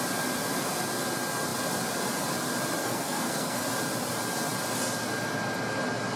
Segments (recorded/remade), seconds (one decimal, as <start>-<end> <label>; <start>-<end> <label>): 0.0-2.8 recorded; 2.8-3.6 remade; 3.6-6.2 recorded